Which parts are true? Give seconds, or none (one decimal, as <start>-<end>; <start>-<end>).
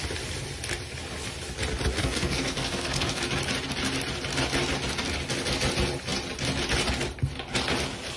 0.0-2.0; 3.2-8.2